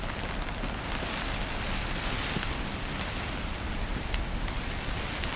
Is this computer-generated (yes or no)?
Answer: no